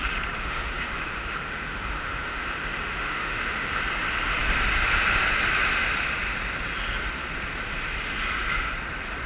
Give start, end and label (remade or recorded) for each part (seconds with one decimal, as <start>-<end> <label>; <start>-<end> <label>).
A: 0.0-0.4 recorded; 0.4-3.8 remade; 3.8-9.3 recorded